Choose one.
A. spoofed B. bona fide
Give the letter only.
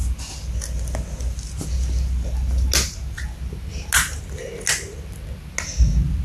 B